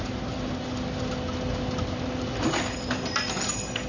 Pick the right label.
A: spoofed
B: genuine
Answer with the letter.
B